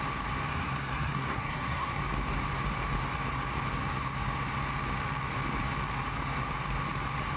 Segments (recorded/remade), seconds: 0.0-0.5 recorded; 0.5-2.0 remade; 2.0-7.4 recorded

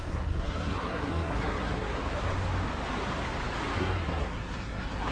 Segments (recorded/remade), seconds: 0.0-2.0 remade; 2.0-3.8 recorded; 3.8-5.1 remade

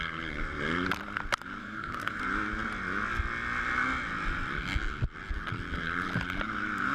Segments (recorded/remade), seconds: 0.0-1.6 recorded; 1.6-2.2 remade; 2.2-6.9 recorded